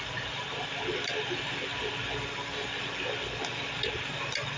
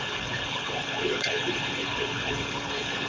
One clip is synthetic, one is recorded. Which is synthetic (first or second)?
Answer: second